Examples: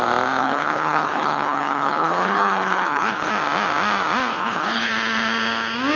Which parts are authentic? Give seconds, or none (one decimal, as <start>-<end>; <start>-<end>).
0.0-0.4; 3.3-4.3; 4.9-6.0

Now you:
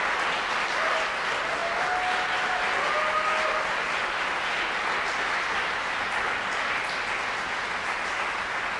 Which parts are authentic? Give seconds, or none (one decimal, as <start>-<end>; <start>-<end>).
0.0-8.8

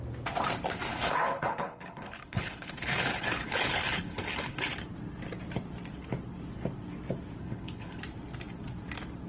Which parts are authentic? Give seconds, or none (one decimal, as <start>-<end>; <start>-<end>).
0.0-0.9; 4.7-7.4; 8.0-9.3

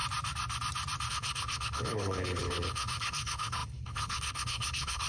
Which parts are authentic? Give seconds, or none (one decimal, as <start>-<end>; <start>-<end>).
0.0-1.1